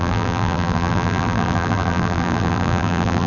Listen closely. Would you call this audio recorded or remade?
remade